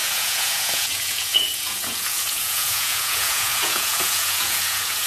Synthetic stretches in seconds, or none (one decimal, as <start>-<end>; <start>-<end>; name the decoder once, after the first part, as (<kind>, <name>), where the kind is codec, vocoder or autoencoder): 0.0-5.1 (vocoder, Vocos)